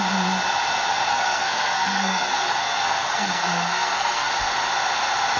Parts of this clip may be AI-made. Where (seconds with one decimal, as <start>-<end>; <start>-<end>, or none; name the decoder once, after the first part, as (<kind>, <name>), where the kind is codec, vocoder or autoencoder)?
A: 1.1-4.3 (codec, SNAC)